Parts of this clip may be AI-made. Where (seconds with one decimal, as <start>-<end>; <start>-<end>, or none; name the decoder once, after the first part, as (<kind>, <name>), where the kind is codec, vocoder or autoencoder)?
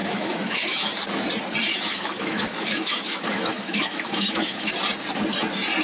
0.0-1.0 (autoencoder, DAC-VAE); 1.7-4.7